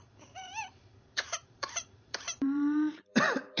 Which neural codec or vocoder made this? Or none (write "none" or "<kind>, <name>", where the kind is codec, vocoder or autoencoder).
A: vocoder, BigVGAN v2